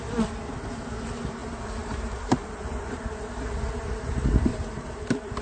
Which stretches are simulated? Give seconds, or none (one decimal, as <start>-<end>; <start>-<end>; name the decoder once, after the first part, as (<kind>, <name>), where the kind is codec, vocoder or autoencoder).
1.4-3.5 (vocoder, BigVGAN v2); 4.5-5.4